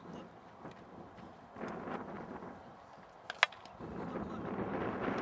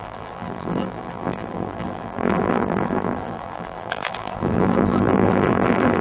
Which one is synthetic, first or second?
second